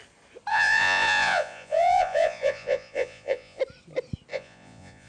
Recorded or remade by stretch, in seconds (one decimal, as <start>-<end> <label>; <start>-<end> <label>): 0.0-0.5 recorded; 0.5-3.6 remade; 3.6-4.3 recorded; 4.3-5.1 remade